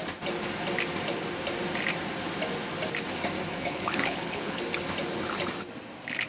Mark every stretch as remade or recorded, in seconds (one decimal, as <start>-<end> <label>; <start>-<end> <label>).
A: 0.0-3.5 recorded; 3.5-4.6 remade; 4.6-6.3 recorded